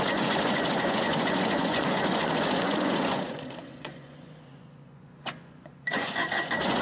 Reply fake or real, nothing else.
fake